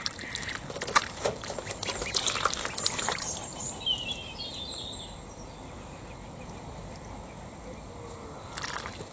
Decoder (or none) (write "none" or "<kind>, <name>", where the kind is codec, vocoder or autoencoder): none